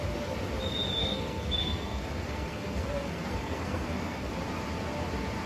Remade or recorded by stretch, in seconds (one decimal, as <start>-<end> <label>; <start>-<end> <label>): 0.0-1.0 recorded; 1.0-4.3 remade; 4.3-5.5 recorded